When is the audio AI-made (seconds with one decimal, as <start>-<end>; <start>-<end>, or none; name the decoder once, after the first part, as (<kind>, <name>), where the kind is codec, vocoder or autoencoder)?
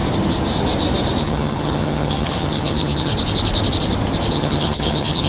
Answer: 1.2-3.1 (vocoder, HiFi-GAN); 4.3-5.3